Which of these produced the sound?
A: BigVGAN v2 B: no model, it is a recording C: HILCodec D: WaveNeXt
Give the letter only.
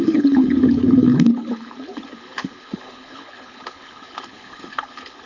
C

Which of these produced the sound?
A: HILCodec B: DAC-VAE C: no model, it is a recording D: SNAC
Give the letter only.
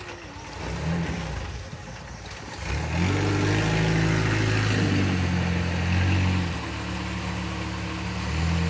C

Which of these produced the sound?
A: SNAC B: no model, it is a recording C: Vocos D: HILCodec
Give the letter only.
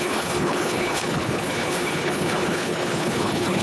D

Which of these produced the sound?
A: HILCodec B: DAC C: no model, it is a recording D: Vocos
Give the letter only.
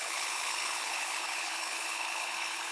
A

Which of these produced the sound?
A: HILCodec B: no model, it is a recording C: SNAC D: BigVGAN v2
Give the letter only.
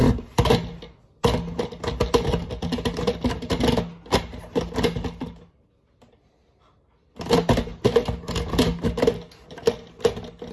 B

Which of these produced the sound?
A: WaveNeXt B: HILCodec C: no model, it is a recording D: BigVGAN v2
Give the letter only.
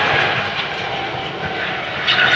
C